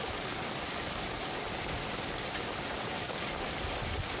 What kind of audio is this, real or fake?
real